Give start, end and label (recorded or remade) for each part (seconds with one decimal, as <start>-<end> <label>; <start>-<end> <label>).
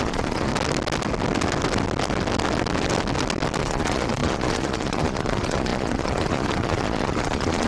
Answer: 0.0-0.5 remade; 0.5-3.6 recorded; 3.6-7.7 remade